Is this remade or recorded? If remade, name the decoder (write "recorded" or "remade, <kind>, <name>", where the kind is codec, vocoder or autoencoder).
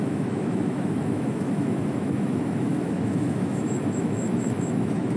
remade, autoencoder, DAC-VAE